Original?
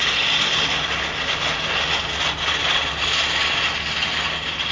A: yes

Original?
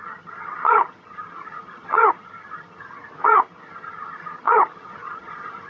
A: no